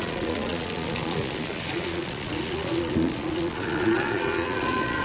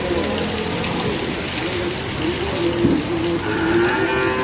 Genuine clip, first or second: second